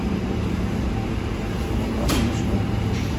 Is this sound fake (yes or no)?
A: yes